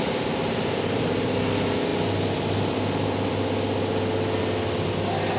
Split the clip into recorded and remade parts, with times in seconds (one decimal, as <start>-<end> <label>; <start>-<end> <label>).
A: 0.0-5.4 recorded